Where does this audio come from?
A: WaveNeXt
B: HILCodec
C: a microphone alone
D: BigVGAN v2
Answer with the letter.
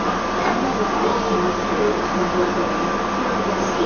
C